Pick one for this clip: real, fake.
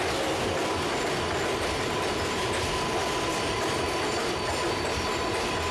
real